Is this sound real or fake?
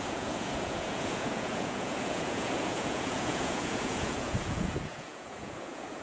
fake